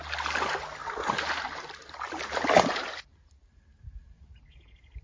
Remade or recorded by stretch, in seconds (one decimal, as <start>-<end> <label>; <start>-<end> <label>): 0.0-5.0 recorded